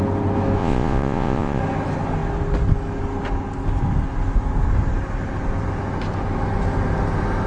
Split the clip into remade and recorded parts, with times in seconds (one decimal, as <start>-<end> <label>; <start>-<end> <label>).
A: 0.0-0.6 recorded; 0.6-1.6 remade; 1.6-7.5 recorded